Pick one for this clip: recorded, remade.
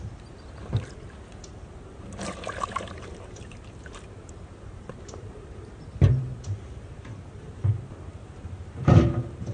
remade